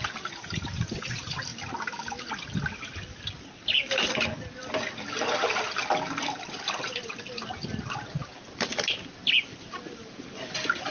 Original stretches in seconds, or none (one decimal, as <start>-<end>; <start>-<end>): 0.0-10.9